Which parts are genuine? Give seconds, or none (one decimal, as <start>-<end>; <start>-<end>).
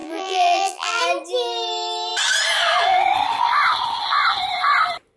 1.0-5.2